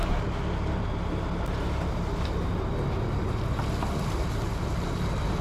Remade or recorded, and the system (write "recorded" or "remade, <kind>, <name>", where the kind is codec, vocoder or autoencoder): recorded